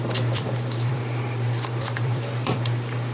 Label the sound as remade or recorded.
remade